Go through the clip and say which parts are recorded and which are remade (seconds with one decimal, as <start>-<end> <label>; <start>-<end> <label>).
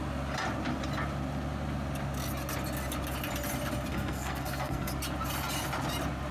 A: 0.0-3.9 recorded; 3.9-4.9 remade; 4.9-6.3 recorded